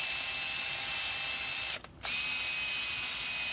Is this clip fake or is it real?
real